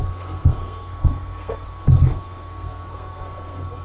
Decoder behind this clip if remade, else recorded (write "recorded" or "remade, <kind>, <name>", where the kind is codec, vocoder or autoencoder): remade, codec, SNAC